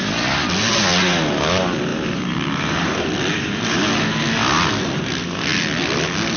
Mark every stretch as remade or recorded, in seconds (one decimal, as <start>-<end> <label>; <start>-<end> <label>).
0.0-1.9 recorded; 1.9-3.1 remade; 3.1-6.4 recorded